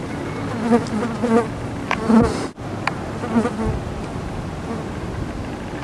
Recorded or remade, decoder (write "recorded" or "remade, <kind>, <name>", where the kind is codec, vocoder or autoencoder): recorded